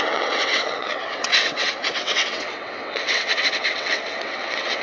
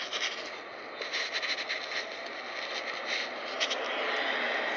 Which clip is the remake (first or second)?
first